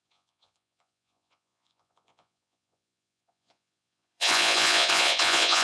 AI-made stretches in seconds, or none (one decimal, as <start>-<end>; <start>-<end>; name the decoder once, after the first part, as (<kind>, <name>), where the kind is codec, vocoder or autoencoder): 0.0-5.6 (vocoder, Vocos)

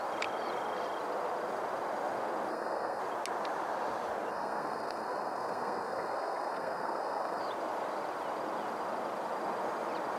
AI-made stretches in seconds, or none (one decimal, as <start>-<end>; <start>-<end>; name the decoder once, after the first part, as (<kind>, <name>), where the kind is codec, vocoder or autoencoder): 2.5-3.0 (codec, SNAC); 4.3-7.4

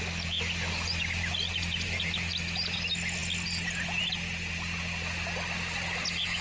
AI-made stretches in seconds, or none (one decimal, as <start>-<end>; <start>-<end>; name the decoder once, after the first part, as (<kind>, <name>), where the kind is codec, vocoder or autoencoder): none

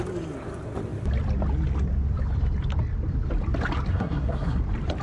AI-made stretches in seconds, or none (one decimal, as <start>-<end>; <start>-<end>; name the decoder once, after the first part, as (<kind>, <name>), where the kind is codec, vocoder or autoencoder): 3.9-4.6 (codec, SNAC)

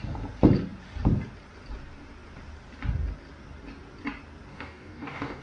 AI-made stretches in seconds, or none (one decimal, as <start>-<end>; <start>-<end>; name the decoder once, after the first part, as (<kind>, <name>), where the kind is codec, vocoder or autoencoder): 4.5-5.4 (codec, DAC)

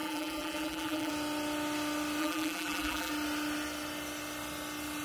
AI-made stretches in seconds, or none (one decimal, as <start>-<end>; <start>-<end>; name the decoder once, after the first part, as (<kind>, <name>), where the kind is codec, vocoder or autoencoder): 0.0-1.1 (vocoder, BigVGAN v2); 2.2-3.1

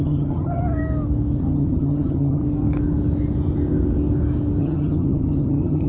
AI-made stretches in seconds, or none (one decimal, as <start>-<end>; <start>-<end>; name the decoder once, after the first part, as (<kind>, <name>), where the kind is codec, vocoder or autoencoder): 0.0-0.6 (vocoder, HiFi-GAN); 1.4-2.4; 4.6-5.9

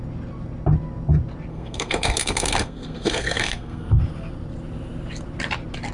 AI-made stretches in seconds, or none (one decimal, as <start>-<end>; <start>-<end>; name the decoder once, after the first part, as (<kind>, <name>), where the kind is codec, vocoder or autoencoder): 1.5-3.9 (codec, SNAC)